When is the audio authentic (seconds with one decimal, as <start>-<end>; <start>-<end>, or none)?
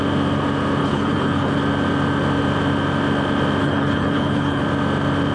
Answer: 0.0-0.8; 1.6-3.6; 4.6-5.3